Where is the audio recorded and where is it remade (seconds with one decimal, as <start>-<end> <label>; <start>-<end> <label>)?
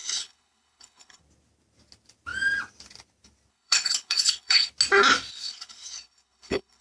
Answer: 0.0-1.2 remade; 1.2-3.5 recorded; 3.5-4.7 remade; 4.7-5.3 recorded; 5.3-6.8 remade